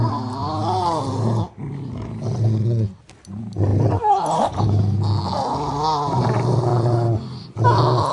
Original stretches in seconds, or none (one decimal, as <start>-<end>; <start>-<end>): 0.0-8.1